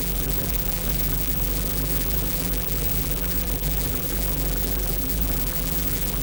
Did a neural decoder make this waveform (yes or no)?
yes